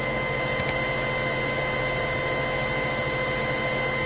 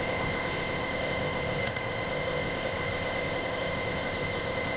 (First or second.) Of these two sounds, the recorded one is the first